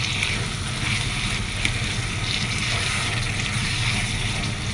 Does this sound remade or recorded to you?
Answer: recorded